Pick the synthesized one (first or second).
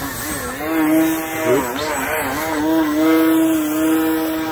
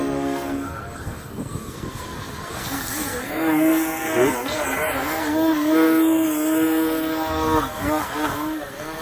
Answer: second